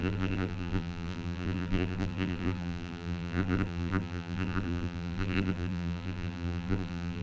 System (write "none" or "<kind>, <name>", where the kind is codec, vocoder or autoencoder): vocoder, BigVGAN v2